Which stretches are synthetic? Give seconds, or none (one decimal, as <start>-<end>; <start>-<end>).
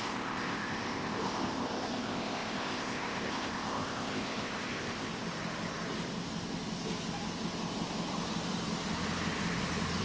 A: 0.0-5.1